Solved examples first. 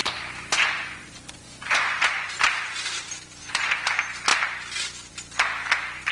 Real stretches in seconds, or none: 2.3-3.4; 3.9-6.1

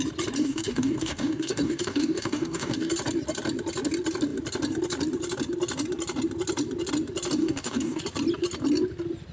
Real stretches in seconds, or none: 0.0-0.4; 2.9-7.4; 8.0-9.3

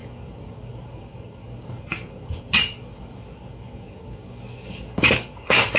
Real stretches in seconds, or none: none

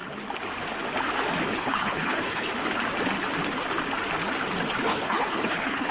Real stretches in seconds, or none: 0.0-1.5; 2.5-4.8